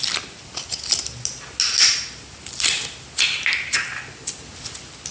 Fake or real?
real